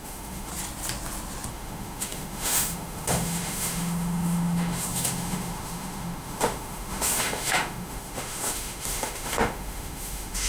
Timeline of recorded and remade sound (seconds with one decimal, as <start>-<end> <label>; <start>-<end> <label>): 0.0-0.5 remade; 0.5-1.5 recorded; 1.5-10.5 remade